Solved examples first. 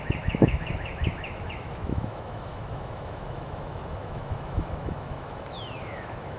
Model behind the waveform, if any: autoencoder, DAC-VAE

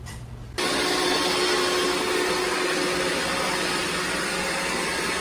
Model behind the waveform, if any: none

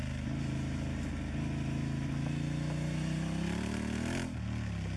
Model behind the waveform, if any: none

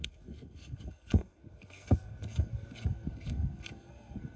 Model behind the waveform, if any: codec, SNAC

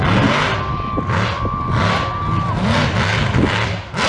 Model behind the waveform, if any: none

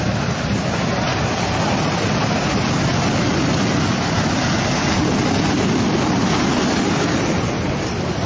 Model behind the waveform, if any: none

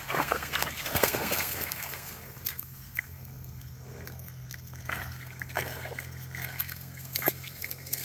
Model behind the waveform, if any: codec, SNAC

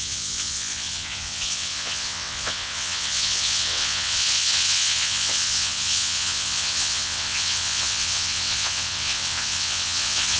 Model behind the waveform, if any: vocoder, WaveNeXt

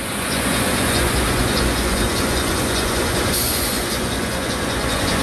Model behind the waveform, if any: vocoder, Vocos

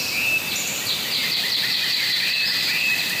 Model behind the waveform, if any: none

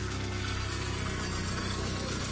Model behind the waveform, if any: codec, SNAC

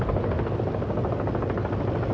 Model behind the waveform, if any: none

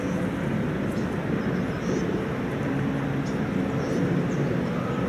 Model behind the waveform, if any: none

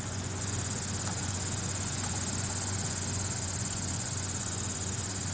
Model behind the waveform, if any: vocoder, Vocos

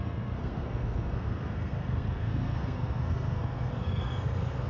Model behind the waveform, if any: codec, SNAC